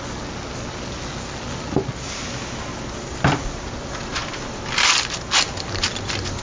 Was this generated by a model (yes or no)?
no